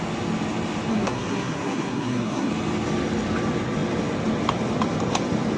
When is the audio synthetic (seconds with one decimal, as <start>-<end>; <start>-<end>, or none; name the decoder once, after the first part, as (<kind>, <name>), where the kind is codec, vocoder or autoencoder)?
0.9-2.5 (codec, SNAC)